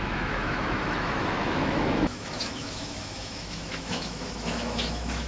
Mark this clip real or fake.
fake